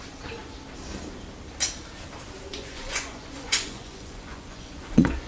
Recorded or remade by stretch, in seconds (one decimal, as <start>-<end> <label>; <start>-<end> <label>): 0.0-2.5 recorded; 2.5-5.3 remade

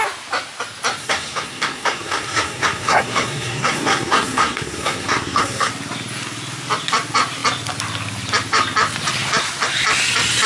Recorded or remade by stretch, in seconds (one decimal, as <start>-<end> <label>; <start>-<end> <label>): 0.0-1.0 recorded; 1.0-5.7 remade; 5.7-10.5 recorded

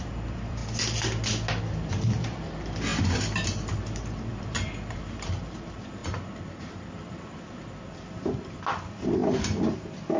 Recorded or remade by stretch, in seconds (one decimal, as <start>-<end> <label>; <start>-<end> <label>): 0.0-0.6 remade; 0.6-1.6 recorded; 1.6-2.9 remade; 2.9-3.6 recorded; 3.6-6.0 remade; 6.0-6.6 recorded; 6.6-9.2 remade; 9.2-10.2 recorded